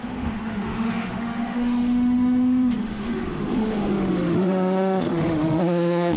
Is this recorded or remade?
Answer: remade